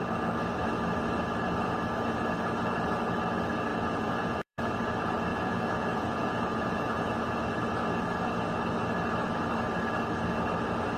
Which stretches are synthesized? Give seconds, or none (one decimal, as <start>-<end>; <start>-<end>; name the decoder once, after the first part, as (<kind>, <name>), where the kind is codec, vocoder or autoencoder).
3.7-4.7 (vocoder, Vocos); 5.3-7.0

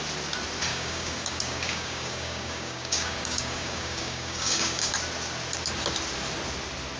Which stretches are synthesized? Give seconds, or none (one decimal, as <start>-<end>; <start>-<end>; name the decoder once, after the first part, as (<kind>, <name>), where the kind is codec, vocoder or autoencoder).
0.7-4.9 (codec, DAC)

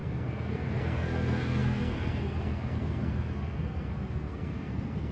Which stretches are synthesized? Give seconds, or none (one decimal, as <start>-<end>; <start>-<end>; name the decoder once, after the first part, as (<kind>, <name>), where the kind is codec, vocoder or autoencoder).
0.0-5.1 (codec, SNAC)

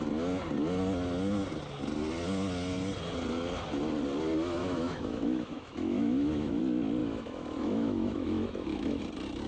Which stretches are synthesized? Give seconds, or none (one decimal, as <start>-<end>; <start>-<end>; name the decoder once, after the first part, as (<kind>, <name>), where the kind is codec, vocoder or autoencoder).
4.6-6.6 (autoencoder, DAC-VAE); 7.0-9.0

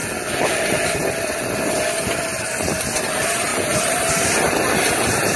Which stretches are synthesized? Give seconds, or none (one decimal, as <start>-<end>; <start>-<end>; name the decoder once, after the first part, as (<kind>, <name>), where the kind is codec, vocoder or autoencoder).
none